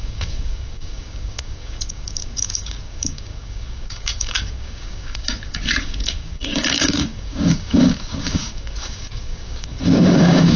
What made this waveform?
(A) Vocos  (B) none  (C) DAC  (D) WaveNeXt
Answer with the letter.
C